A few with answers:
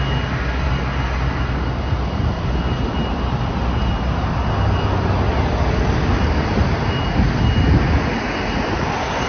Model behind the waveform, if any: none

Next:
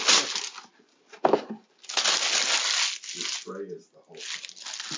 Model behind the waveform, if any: none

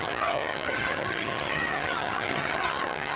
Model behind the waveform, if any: vocoder, HiFi-GAN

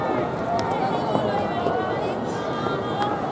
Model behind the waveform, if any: none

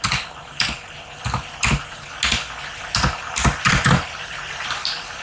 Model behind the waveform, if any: none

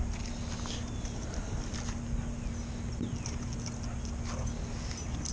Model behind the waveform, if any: none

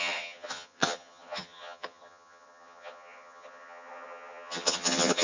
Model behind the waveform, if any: vocoder, HiFi-GAN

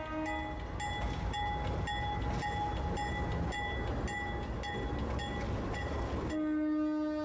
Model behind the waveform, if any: none